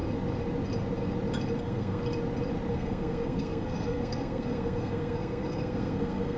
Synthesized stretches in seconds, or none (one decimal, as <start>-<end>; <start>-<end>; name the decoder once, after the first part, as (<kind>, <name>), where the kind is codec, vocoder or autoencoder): 1.6-2.0 (codec, SNAC); 2.7-6.4